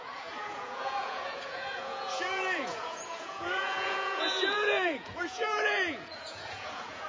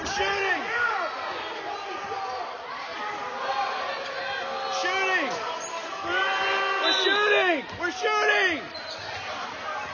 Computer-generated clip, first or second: first